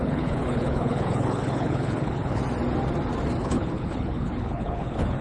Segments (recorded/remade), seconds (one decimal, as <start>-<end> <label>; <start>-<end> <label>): 0.0-2.4 remade; 2.4-3.4 recorded; 3.4-5.2 remade